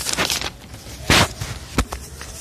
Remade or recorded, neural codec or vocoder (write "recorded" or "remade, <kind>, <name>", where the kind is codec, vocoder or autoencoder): recorded